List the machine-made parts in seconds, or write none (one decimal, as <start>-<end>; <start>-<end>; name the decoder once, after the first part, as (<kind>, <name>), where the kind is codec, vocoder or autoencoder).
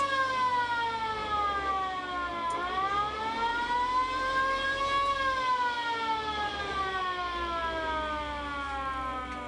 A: 3.5-4.8 (vocoder, BigVGAN v2); 6.5-7.0